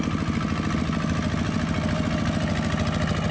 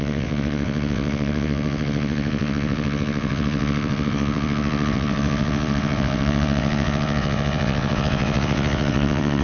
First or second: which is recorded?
first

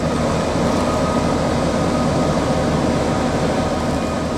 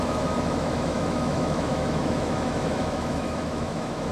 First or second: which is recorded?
first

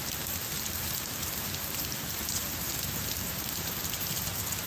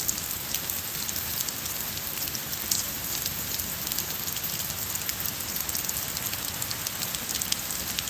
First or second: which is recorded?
second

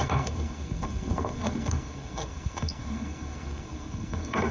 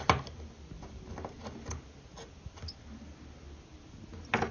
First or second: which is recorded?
second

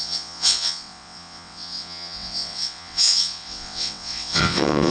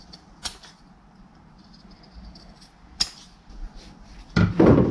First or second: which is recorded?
second